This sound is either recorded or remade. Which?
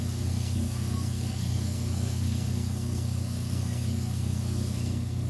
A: remade